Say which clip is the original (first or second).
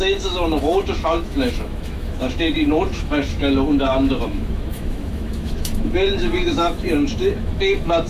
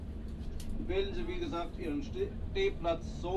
second